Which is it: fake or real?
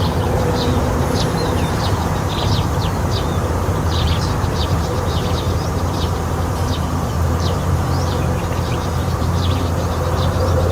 fake